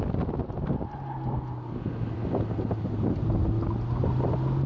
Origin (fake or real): real